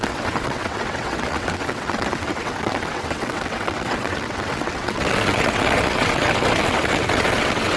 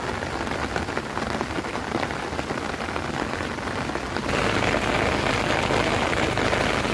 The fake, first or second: first